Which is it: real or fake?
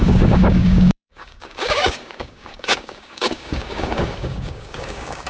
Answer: fake